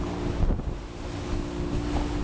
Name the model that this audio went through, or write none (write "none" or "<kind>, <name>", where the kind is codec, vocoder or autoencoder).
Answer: none